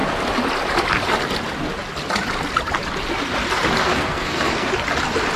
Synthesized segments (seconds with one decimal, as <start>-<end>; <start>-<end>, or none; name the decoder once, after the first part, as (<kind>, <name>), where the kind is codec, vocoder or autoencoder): 3.8-4.7 (codec, SNAC)